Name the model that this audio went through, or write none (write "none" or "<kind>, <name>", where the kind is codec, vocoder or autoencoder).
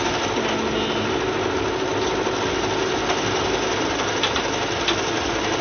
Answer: none